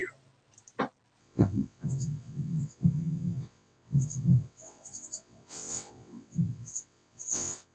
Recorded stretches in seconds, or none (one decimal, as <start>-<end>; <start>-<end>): 0.0-1.2